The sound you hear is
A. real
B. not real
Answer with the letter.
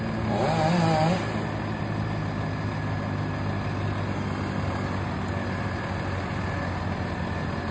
A